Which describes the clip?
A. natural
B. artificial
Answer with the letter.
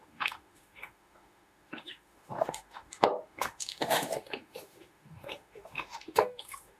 B